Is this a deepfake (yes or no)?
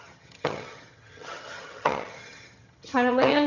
yes